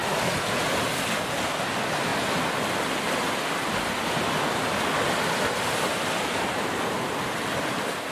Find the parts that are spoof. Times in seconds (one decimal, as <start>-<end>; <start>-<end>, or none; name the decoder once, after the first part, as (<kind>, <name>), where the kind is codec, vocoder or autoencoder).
none